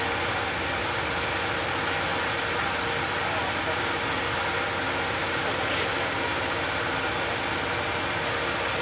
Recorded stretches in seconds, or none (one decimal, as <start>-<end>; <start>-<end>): 0.0-8.8

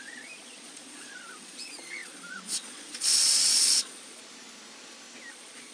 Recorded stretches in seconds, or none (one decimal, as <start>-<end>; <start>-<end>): 4.2-5.3

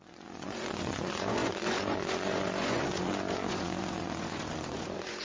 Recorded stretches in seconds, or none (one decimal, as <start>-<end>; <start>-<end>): none

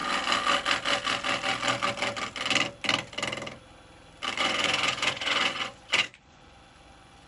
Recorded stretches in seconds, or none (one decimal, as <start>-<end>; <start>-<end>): 0.0-4.4